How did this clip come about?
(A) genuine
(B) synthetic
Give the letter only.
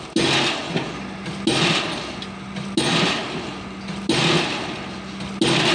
A